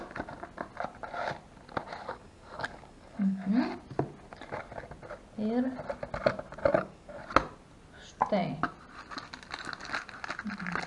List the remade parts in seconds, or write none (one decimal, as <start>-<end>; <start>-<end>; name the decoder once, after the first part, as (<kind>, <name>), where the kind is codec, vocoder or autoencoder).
2.0-3.5 (codec, DAC); 6.6-7.2